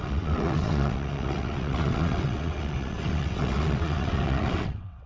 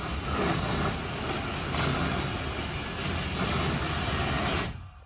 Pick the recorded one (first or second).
second